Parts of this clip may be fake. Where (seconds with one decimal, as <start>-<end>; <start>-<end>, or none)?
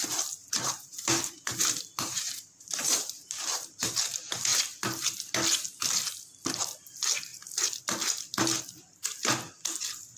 0.4-3.9